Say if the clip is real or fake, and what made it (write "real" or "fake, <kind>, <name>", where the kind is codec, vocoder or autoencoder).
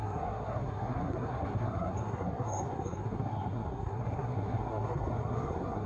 fake, codec, SNAC